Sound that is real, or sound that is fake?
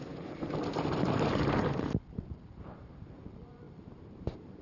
fake